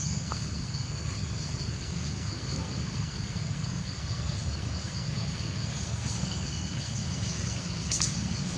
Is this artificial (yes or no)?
yes